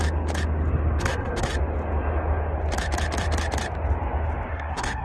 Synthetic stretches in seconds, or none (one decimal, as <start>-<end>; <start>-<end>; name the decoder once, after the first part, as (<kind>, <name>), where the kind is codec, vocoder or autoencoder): 1.0-1.5 (codec, SNAC); 4.5-5.0